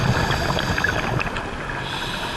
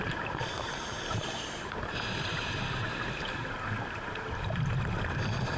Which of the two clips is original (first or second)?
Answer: first